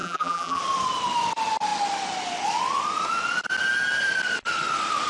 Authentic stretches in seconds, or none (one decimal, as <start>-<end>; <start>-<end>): 0.6-5.1